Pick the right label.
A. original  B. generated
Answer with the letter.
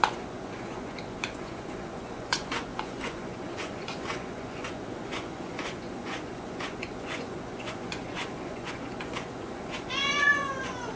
B